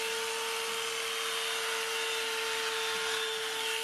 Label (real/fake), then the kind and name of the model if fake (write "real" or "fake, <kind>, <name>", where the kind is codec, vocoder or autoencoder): real